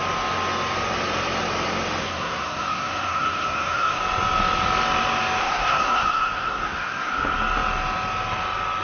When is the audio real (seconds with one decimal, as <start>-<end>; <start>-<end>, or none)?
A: 0.0-2.0; 4.0-5.4; 7.1-8.8